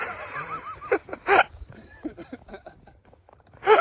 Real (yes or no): no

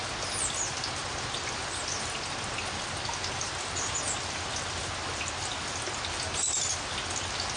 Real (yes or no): yes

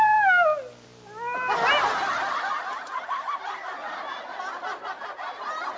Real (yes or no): yes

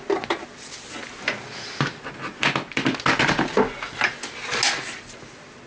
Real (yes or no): yes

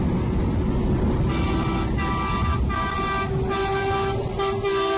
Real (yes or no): yes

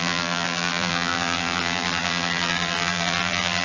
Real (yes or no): no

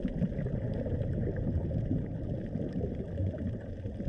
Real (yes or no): yes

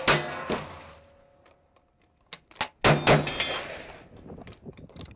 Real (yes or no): yes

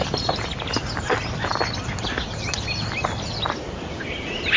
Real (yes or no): yes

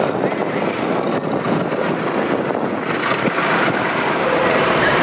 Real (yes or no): yes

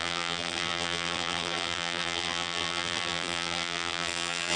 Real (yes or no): no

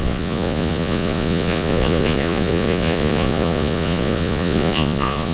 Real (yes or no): no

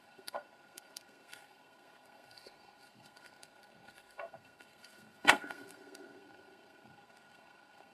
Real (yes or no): no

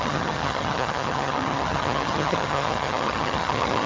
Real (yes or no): no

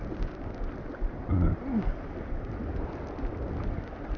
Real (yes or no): yes